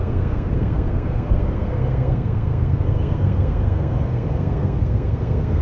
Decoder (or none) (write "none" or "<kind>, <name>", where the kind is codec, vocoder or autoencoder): codec, SNAC